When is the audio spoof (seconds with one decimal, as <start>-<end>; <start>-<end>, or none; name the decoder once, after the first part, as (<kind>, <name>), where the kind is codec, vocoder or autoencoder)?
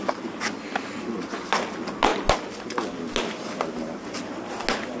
none